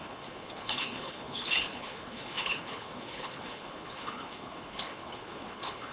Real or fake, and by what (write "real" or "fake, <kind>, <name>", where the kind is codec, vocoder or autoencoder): fake, codec, HILCodec